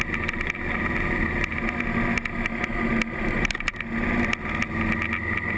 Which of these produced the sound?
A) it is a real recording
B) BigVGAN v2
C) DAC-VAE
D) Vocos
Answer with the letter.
A